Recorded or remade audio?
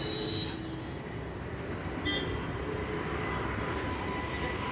recorded